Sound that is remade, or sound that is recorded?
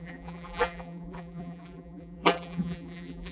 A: remade